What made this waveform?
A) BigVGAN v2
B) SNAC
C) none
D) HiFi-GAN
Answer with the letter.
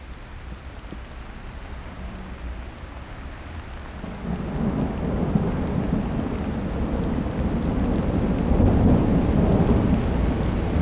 C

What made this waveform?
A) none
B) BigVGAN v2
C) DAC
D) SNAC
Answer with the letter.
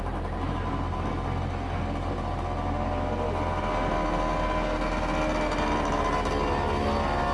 A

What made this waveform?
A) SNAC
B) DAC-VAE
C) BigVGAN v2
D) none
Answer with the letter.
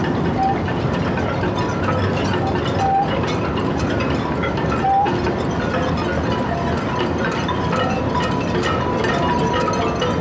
D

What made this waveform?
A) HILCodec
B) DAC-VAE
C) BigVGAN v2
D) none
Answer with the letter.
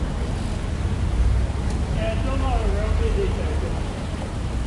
D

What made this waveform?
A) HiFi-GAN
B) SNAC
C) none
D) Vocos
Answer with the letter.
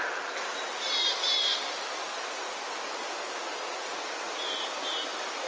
C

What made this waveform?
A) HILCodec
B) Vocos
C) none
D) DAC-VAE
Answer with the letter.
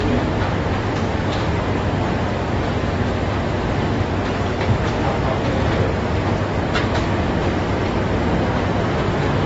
C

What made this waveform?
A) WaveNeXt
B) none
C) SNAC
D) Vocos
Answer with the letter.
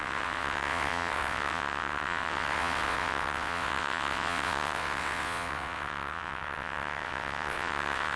A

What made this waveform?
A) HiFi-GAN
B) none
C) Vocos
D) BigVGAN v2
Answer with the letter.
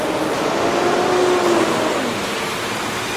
B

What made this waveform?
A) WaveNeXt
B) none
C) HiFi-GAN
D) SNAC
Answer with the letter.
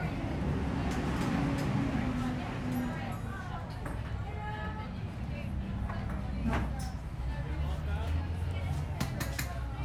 B